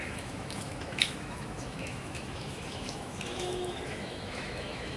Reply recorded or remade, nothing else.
remade